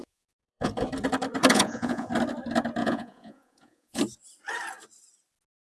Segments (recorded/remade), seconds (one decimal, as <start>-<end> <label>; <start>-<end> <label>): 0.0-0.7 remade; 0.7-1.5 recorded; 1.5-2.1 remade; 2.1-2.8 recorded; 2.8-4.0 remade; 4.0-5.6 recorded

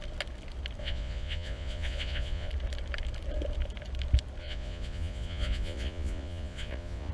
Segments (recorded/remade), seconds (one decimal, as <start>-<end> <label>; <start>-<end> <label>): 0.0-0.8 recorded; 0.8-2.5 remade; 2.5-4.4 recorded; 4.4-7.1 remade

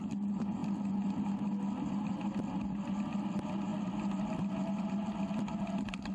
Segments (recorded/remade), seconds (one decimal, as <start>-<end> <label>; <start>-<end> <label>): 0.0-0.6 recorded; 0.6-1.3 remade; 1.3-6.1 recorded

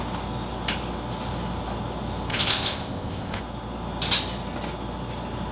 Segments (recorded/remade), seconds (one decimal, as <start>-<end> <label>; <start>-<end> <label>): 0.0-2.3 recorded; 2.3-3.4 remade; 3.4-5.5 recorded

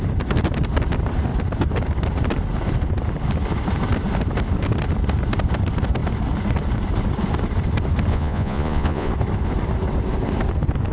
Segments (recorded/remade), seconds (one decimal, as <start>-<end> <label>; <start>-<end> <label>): 0.0-8.1 recorded; 8.1-9.1 remade; 9.1-10.9 recorded